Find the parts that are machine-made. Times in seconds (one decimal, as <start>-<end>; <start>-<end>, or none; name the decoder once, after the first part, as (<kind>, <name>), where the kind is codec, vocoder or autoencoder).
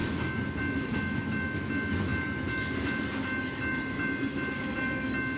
none